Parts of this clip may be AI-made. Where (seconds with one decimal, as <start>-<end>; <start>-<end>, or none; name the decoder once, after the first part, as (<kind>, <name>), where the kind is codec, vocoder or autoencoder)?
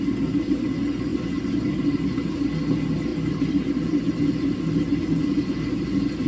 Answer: 1.1-2.4 (vocoder, BigVGAN v2)